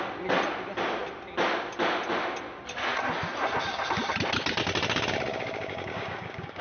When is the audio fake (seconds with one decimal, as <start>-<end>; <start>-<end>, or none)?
5.3-6.6